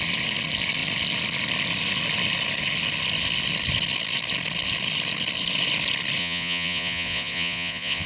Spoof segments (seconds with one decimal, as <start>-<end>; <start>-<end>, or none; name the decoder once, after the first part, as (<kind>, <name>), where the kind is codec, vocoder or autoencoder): 6.2-8.1 (vocoder, Vocos)